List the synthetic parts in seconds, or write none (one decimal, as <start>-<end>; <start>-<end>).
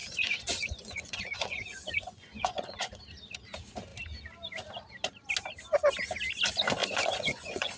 0.0-3.0; 6.8-7.8